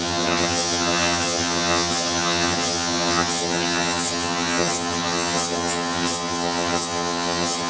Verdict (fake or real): fake